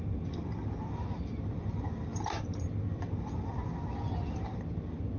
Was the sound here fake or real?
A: real